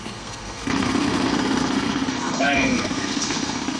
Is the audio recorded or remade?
remade